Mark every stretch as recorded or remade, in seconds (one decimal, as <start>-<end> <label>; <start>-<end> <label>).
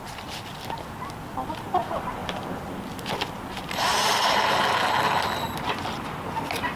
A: 0.0-6.8 recorded